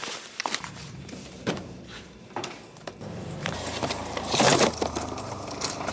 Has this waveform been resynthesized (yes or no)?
yes